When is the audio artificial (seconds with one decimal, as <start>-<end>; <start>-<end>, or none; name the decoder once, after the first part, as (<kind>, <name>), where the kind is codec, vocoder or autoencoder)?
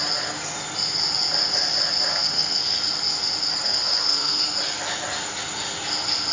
2.1-2.8 (codec, SNAC); 3.5-4.4